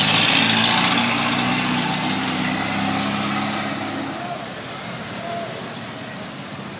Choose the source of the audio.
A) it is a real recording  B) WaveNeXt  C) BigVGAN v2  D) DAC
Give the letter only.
A